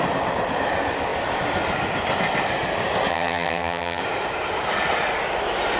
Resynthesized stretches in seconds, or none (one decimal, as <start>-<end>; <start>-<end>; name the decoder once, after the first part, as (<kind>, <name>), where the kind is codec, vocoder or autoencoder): 3.1-4.0 (vocoder, HiFi-GAN)